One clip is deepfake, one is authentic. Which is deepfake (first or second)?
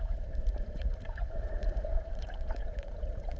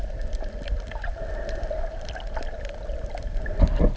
first